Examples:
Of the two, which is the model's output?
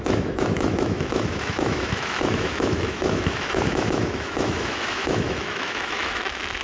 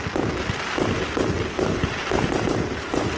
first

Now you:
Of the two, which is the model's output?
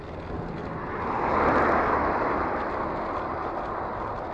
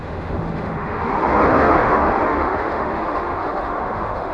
second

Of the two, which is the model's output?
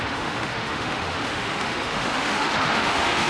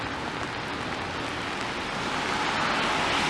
first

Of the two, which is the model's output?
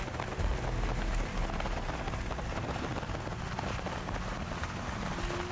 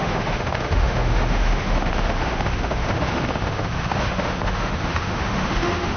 second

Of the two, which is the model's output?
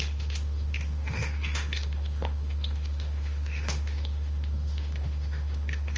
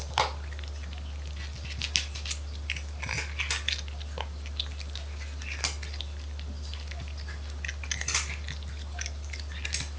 first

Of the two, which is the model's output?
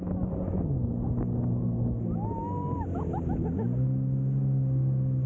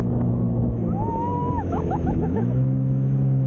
second